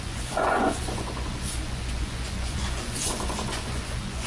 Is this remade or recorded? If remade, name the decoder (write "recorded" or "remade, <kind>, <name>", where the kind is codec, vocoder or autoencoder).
remade, vocoder, Vocos